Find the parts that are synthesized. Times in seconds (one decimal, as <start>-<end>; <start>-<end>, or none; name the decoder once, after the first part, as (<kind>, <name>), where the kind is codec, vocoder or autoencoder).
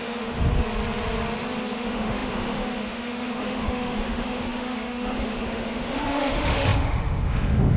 0.0-0.4 (autoencoder, DAC-VAE); 1.7-7.8